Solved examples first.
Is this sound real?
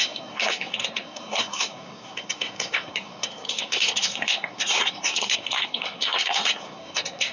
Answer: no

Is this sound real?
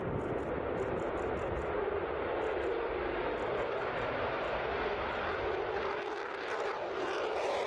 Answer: yes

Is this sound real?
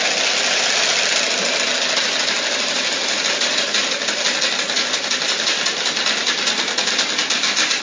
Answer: yes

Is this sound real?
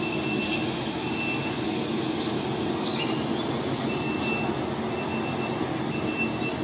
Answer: yes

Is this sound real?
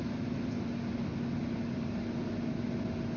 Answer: yes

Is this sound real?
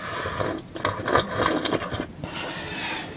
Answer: yes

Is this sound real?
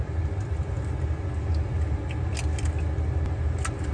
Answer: yes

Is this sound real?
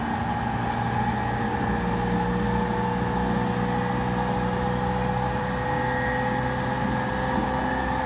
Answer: yes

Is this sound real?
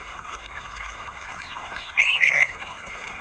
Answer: no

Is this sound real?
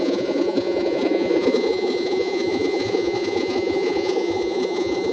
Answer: no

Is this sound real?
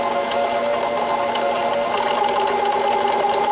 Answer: yes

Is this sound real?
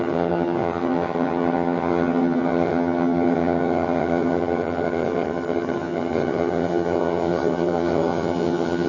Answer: no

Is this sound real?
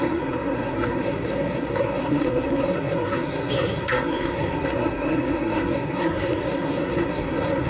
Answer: no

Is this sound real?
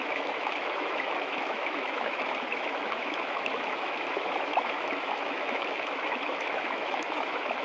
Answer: no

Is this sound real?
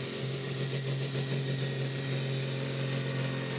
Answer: yes